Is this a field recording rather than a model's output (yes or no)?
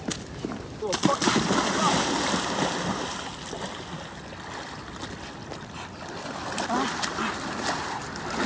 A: yes